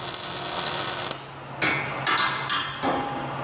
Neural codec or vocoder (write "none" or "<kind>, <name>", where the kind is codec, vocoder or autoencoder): none